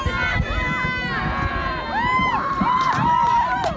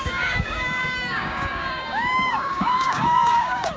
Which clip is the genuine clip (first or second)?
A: first